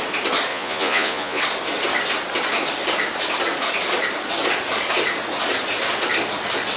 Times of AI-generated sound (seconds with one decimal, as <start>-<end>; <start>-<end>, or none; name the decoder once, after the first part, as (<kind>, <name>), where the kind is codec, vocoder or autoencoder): 0.5-1.4 (vocoder, Vocos)

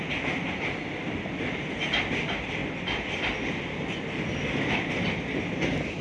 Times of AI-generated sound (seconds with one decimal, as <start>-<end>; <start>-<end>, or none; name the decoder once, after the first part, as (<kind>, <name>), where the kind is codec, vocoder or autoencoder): none

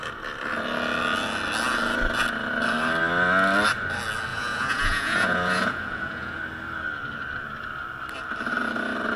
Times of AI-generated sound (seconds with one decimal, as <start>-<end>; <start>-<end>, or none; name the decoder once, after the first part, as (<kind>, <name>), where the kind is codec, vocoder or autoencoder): 4.3-6.4 (vocoder, Vocos)

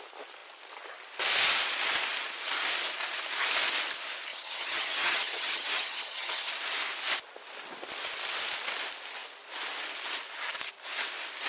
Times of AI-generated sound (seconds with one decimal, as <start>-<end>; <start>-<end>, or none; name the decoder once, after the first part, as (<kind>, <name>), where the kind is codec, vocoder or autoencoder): 4.3-6.5 (vocoder, HiFi-GAN)

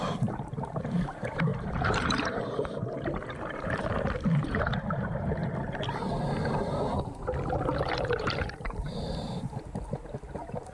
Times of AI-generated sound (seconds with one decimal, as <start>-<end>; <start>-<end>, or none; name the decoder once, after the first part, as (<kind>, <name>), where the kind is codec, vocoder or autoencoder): 0.0-5.4 (vocoder, BigVGAN v2); 7.9-10.7

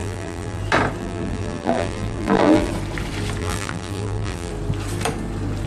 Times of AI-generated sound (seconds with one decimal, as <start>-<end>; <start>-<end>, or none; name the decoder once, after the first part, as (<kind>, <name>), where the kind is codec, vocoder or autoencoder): 0.0-0.6 (vocoder, BigVGAN v2); 1.0-2.7; 3.4-4.5

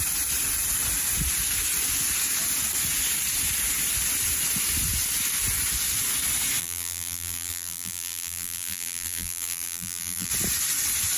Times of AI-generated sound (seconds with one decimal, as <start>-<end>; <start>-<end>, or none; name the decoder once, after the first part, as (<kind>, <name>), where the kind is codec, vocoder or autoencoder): 6.6-10.3 (vocoder, BigVGAN v2)

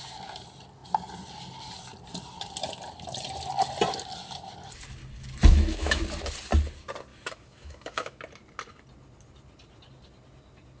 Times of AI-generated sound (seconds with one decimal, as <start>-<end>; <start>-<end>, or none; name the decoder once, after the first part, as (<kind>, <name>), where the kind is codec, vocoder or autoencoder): 5.5-6.0 (autoencoder, DAC-VAE); 7.1-8.2